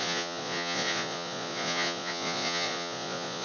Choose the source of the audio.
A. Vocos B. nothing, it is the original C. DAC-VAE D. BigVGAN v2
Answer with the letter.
A